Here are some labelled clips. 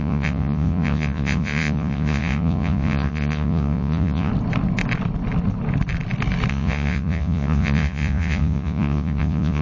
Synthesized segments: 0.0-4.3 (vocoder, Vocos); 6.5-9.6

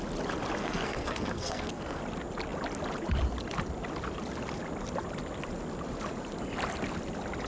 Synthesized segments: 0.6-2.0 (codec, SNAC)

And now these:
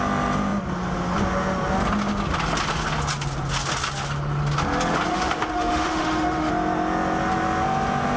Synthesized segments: 5.1-6.5 (autoencoder, DAC-VAE)

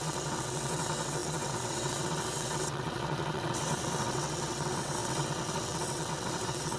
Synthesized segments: 0.0-6.8 (vocoder, WaveNeXt)

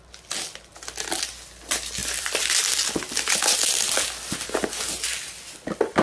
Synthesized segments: 2.0-2.6 (vocoder, BigVGAN v2)

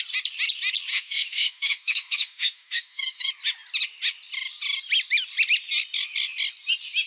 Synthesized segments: 0.9-3.3 (autoencoder, DAC-VAE)

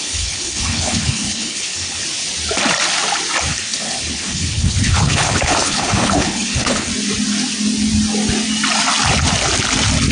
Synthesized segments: 0.0-2.0 (codec, HILCodec); 3.5-6.9

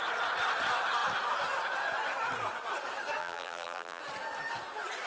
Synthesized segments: 3.2-4.0 (vocoder, BigVGAN v2)